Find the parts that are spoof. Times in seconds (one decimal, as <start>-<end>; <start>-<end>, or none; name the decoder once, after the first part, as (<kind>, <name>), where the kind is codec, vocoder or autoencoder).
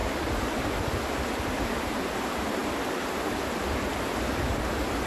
none